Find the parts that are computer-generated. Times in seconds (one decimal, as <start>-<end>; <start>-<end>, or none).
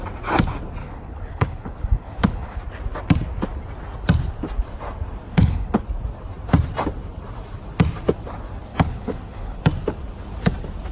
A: 0.8-2.6; 5.3-5.8; 8.7-9.6